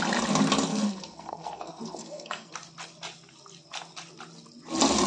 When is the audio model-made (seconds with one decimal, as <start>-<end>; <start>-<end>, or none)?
0.7-2.5